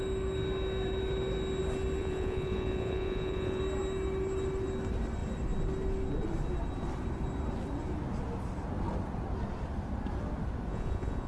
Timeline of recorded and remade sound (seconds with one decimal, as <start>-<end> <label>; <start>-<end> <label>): 0.0-2.0 recorded; 2.0-3.6 remade; 3.6-10.7 recorded; 10.7-11.3 remade